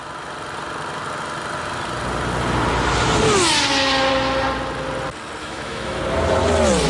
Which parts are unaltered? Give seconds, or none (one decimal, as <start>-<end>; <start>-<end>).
0.0-5.4; 6.0-6.9